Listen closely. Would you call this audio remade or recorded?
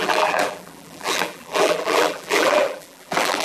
remade